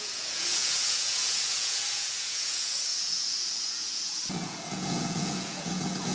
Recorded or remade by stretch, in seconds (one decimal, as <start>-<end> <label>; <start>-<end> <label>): 0.0-6.1 remade